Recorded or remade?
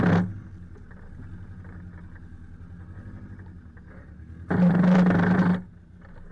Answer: recorded